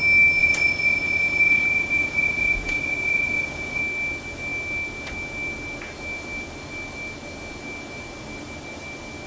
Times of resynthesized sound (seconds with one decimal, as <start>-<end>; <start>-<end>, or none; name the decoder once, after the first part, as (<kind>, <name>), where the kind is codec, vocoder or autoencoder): 0.4-3.8 (vocoder, Vocos)